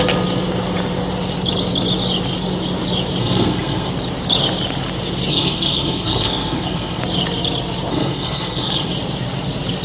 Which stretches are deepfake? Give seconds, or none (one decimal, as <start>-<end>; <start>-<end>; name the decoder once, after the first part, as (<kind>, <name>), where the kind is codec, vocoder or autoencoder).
3.2-3.9 (codec, SNAC); 5.3-7.0; 7.9-8.9